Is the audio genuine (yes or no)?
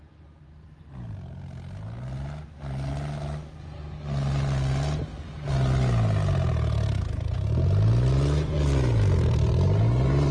yes